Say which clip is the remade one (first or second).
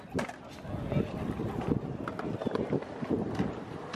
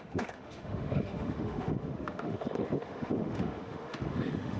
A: second